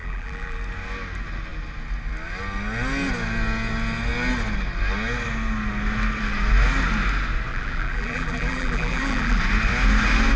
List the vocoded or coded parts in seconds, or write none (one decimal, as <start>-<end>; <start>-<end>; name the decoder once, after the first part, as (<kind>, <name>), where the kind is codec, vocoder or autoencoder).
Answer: 0.0-0.6 (vocoder, BigVGAN v2); 7.5-9.4

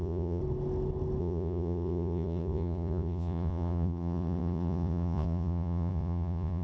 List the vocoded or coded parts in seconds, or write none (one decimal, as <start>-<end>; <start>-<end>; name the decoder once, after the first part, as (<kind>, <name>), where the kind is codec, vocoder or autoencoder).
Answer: 0.0-0.4 (vocoder, Vocos); 1.2-6.6

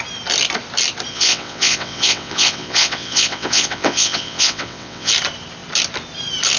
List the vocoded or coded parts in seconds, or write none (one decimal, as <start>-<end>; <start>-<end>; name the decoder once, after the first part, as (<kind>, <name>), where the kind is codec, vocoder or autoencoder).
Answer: 1.1-5.1 (vocoder, WaveNeXt)

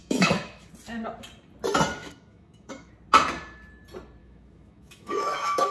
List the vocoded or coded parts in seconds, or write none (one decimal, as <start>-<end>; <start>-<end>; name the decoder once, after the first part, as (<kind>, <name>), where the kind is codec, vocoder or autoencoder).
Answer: 0.0-0.7 (autoencoder, DAC-VAE); 2.0-2.9; 4.2-5.7

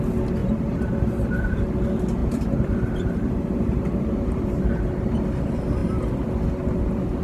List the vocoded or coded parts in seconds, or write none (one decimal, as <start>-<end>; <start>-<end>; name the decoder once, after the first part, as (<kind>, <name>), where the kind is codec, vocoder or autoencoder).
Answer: 0.4-1.5 (vocoder, BigVGAN v2); 2.2-5.2

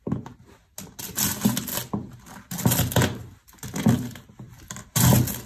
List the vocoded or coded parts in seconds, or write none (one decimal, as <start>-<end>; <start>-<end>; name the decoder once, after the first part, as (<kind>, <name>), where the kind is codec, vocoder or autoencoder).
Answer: none